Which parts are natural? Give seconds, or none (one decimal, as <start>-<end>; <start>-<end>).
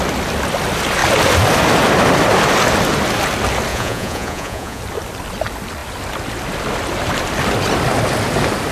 0.0-3.7; 4.8-8.7